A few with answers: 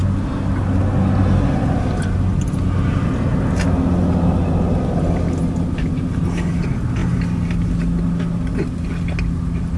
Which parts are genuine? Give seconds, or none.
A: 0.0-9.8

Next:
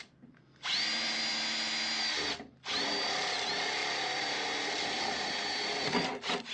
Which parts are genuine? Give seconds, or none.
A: 0.0-6.5

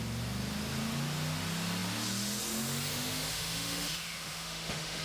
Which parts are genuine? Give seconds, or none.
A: 0.0-2.9

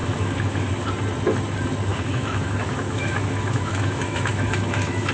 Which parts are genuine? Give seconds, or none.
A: 0.7-1.9

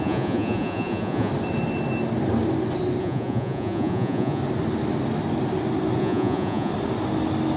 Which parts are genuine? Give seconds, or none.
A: 1.3-3.0; 4.4-6.0; 6.7-7.6

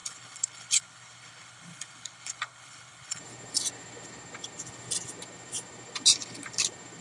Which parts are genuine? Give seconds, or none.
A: 3.2-7.0

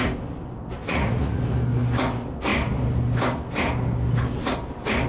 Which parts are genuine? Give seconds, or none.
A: 0.0-0.8; 1.4-5.1